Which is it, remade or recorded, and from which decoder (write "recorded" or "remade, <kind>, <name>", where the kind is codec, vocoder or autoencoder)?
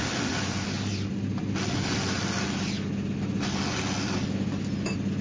recorded